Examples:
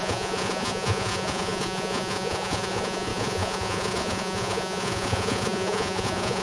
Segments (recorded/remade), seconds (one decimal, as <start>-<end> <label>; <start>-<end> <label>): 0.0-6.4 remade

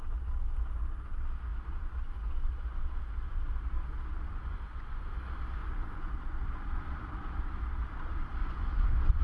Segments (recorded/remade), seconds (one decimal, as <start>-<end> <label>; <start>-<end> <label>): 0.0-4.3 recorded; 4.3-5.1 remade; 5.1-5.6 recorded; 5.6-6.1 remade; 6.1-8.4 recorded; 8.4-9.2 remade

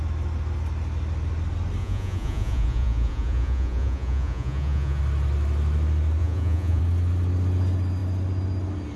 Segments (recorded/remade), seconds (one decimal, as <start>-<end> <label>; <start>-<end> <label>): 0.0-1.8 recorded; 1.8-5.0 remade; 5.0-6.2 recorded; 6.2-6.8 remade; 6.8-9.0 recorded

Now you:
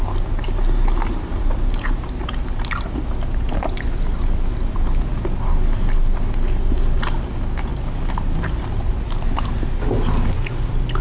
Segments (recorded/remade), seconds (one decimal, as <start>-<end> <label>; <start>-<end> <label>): 0.0-11.0 recorded